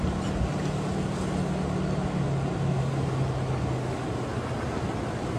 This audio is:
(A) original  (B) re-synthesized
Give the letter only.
A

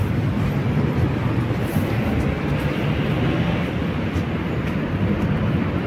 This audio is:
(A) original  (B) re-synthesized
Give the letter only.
A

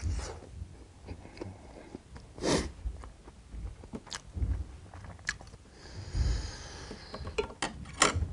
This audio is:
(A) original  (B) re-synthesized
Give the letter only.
A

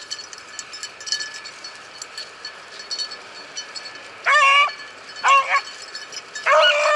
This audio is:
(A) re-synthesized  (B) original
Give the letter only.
B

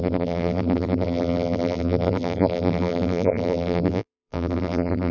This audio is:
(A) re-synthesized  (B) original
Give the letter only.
A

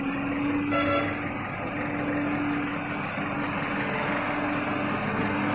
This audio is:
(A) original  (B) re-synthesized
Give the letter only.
A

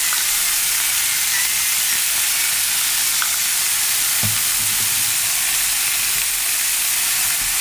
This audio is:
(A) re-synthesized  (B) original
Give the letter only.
B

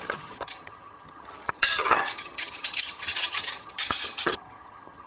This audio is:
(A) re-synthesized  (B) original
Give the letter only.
A